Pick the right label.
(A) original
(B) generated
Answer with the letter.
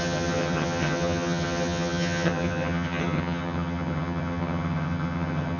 B